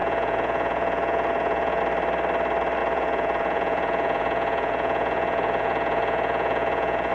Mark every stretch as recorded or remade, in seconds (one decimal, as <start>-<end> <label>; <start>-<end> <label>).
0.0-1.8 remade; 1.8-2.8 recorded; 2.8-7.1 remade